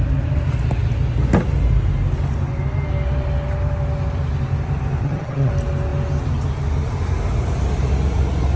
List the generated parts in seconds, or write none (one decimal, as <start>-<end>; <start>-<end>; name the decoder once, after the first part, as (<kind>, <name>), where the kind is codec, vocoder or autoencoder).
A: 5.0-5.5 (vocoder, HiFi-GAN)